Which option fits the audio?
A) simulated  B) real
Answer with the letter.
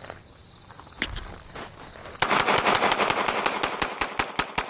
B